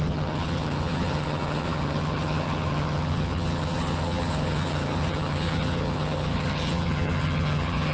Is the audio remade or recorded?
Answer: remade